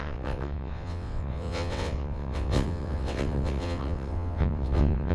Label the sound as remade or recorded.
remade